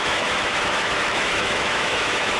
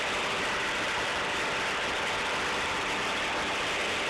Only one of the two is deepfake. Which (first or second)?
first